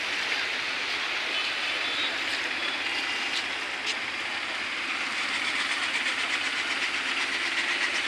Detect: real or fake real